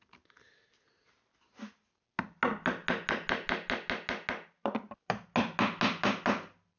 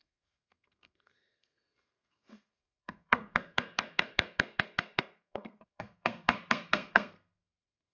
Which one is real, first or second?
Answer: first